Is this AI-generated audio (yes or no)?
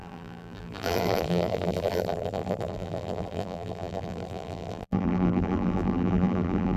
yes